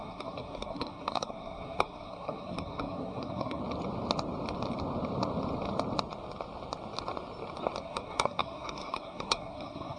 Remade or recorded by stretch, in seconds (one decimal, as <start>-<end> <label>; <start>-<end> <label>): 0.0-3.6 remade; 3.6-7.8 recorded; 7.8-10.0 remade